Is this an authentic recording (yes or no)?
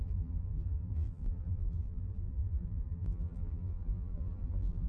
no